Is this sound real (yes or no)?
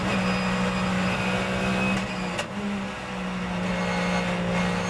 yes